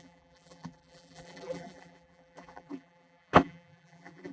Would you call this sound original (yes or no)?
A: no